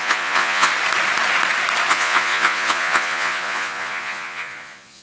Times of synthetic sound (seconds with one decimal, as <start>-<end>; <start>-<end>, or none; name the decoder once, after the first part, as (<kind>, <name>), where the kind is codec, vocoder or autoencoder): 0.0-0.7 (vocoder, Vocos); 1.9-5.0